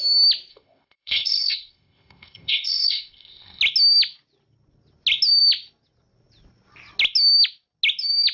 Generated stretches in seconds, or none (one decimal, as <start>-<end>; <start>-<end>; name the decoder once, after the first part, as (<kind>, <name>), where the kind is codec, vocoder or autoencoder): 0.5-3.6 (codec, ZipCodec)